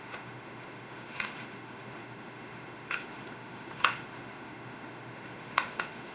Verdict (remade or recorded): remade